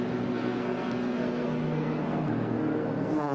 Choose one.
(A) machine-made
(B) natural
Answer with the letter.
A